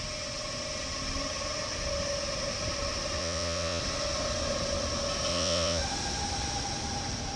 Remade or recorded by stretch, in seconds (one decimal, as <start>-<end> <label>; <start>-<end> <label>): 0.0-3.2 recorded; 3.2-3.8 remade; 3.8-5.3 recorded; 5.3-5.8 remade; 5.8-7.4 recorded